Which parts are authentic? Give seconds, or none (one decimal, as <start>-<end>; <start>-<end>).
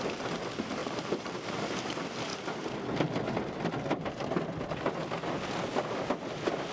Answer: 0.0-0.8; 1.6-6.7